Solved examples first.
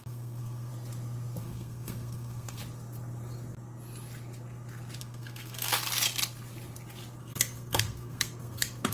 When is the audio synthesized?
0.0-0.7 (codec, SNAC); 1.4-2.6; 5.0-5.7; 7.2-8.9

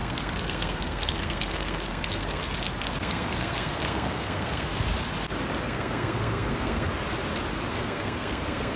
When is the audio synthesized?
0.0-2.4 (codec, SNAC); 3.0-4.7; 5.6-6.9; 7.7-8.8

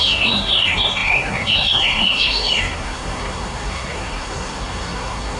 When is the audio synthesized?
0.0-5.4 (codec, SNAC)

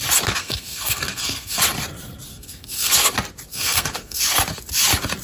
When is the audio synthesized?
0.4-1.6 (codec, SNAC); 2.3-2.9; 3.5-4.2

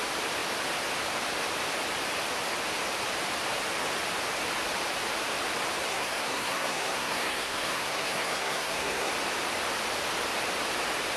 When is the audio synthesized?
5.9-9.1 (codec, SNAC)

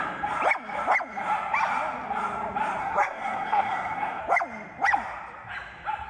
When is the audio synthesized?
2.8-4.2 (codec, SNAC)

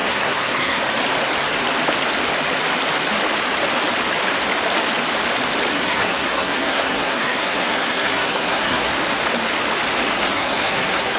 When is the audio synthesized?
0.0-0.8 (codec, SNAC); 5.7-8.9; 10.1-11.2

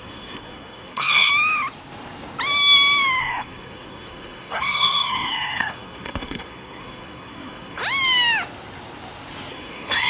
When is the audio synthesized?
0.0-1.3 (codec, SNAC); 3.2-7.8; 9.5-10.1